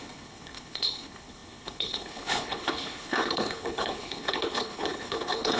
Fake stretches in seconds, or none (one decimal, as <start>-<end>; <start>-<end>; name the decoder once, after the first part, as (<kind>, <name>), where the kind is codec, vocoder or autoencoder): 0.0-5.6 (codec, HILCodec)